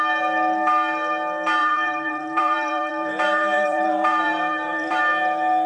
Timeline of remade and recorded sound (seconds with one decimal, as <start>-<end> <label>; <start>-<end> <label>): 0.0-1.6 recorded; 1.6-5.0 remade; 5.0-5.7 recorded